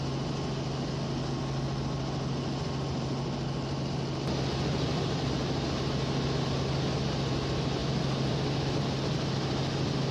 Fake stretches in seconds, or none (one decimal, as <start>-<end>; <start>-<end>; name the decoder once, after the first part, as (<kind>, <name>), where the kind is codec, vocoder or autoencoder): none